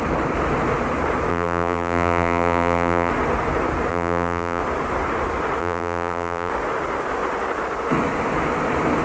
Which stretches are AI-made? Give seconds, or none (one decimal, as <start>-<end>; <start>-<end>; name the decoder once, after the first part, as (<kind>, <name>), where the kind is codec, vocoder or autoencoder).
1.3-3.1 (vocoder, BigVGAN v2); 3.9-4.6; 5.6-6.5